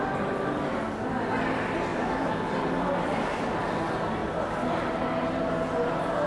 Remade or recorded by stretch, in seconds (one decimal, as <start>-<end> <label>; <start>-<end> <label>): 0.0-1.9 recorded; 1.9-2.5 remade; 2.5-6.3 recorded